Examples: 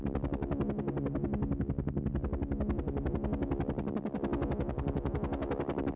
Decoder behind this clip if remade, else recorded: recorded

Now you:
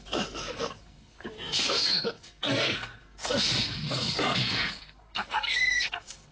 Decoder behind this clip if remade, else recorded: remade, codec, SNAC